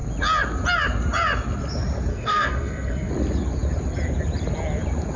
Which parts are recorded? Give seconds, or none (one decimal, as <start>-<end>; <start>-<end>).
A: 0.0-2.1; 3.1-5.2